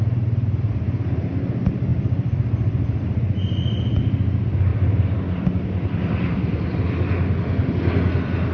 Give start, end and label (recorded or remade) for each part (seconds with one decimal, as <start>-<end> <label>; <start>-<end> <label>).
0.0-1.9 recorded; 1.9-3.2 remade; 3.2-4.7 recorded; 4.7-6.8 remade; 6.8-8.5 recorded

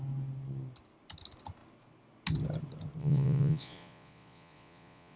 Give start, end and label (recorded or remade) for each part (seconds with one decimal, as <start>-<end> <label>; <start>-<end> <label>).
0.0-3.0 recorded; 3.0-5.2 remade

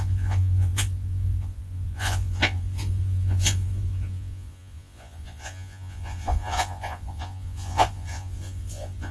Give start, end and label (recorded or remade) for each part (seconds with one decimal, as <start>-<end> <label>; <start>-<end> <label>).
0.0-9.1 remade

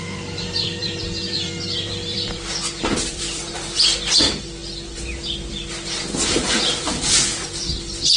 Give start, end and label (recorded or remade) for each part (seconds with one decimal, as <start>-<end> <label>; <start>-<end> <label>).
0.0-0.8 recorded; 0.8-3.8 remade; 3.8-8.2 recorded

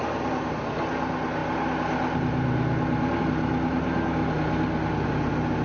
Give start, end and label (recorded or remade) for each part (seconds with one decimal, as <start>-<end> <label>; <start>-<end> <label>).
0.0-5.6 recorded

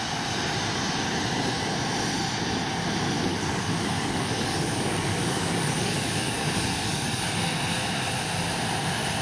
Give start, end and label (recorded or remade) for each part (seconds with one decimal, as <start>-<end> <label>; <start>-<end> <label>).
0.0-3.3 recorded; 3.3-7.4 remade; 7.4-9.2 recorded

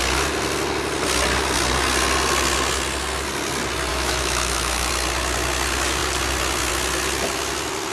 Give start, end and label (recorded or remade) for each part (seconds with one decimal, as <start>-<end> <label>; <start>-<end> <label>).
0.0-3.9 recorded; 3.9-4.9 remade; 4.9-7.9 recorded

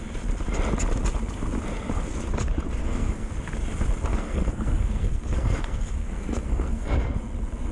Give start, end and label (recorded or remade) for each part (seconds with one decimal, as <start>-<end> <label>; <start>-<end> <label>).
0.0-2.8 recorded; 2.8-3.3 remade; 3.3-4.1 recorded; 4.1-7.1 remade; 7.1-7.7 recorded